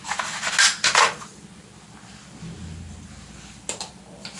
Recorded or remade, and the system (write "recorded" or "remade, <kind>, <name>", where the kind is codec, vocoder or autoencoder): recorded